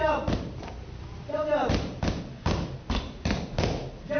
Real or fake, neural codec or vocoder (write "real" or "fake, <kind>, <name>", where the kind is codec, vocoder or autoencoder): real